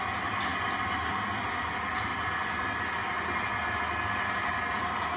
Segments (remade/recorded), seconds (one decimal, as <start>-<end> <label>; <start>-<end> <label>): 0.0-5.2 recorded